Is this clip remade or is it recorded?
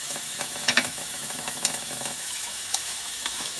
remade